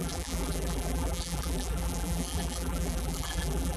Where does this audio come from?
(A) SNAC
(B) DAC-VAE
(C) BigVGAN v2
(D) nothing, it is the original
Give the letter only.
C